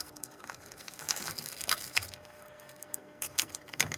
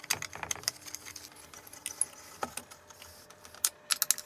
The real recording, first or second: second